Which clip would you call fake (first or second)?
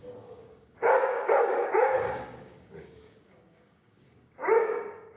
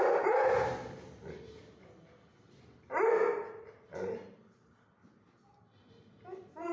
first